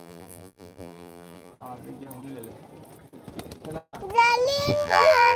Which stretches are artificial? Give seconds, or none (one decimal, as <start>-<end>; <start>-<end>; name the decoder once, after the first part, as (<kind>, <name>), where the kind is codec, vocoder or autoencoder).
0.0-1.5 (vocoder, BigVGAN v2); 4.7-5.4